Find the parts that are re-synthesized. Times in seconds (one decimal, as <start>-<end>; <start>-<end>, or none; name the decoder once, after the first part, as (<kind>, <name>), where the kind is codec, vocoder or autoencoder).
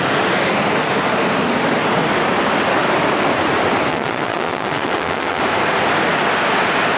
3.9-5.4 (vocoder, WaveNeXt)